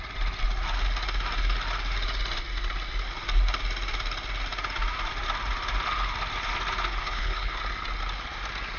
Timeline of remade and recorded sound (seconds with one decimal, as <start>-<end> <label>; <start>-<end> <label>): 0.0-7.0 recorded; 7.0-7.6 remade; 7.6-8.8 recorded